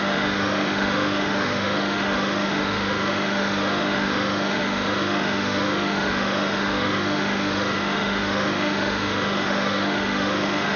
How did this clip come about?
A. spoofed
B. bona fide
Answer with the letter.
A